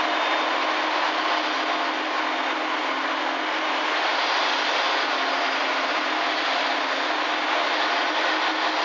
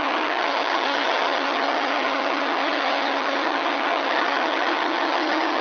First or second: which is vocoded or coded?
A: second